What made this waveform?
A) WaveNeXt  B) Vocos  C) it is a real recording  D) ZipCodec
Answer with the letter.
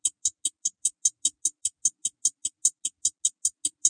C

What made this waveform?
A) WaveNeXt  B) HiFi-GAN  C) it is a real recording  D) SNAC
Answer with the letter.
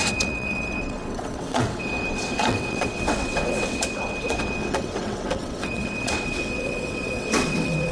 A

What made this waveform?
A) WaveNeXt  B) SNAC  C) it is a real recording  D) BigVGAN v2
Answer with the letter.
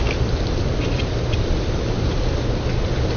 C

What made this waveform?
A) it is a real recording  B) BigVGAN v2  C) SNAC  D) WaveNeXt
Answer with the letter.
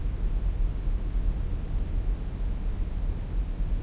A